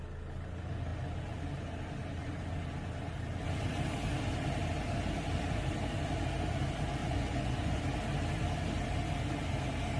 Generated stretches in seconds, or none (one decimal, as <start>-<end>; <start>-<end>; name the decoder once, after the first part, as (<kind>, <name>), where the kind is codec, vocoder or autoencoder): 7.0-7.8 (vocoder, Vocos)